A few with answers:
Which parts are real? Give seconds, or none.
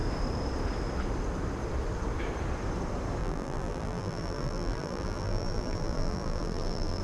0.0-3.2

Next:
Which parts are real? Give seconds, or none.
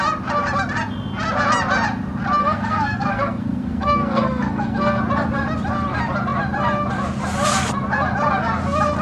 0.0-2.4; 5.0-9.0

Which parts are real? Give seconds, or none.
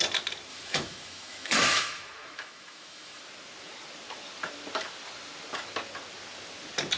0.0-0.5; 3.2-7.0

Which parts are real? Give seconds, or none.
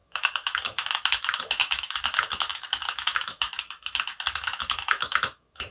none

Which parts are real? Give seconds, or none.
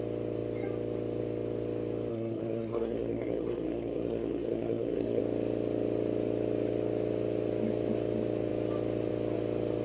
0.0-2.1; 5.2-9.8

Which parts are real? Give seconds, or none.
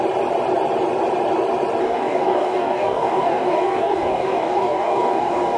0.0-1.8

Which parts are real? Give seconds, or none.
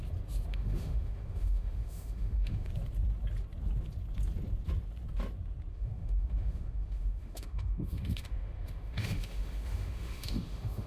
0.0-0.5; 2.7-5.7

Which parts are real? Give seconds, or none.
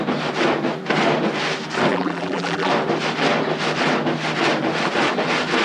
0.0-1.9; 2.7-5.6